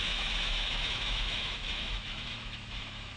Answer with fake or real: fake